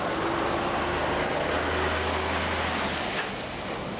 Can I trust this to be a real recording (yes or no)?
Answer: yes